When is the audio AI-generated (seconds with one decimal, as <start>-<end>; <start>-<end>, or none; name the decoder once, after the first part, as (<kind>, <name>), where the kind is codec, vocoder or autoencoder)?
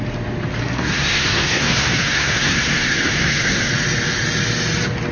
0.6-3.7 (codec, SNAC)